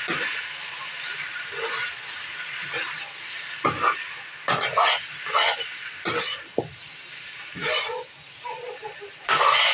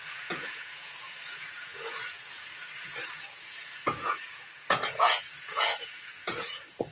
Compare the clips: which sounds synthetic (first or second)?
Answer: second